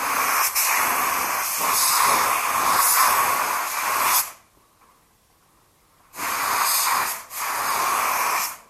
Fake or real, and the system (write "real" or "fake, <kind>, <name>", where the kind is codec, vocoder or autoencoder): real